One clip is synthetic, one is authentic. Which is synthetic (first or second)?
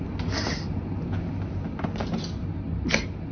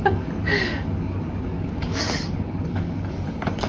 second